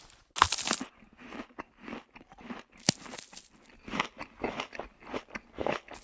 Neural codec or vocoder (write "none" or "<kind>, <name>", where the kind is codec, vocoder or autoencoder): none